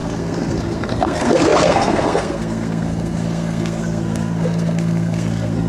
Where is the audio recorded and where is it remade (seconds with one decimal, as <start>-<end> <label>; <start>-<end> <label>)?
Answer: 0.0-5.7 remade